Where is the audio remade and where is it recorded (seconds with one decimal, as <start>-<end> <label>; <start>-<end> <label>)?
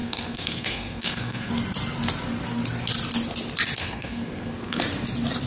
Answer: 0.0-1.5 remade; 1.5-3.8 recorded; 3.8-4.8 remade; 4.8-5.5 recorded